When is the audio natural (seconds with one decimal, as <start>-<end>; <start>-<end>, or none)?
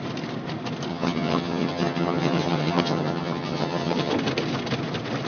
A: 0.0-0.9; 4.1-5.3